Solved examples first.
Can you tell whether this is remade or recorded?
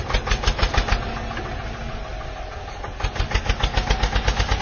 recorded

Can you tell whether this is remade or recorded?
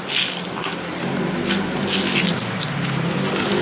recorded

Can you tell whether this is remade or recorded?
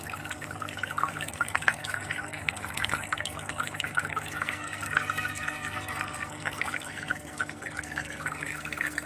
remade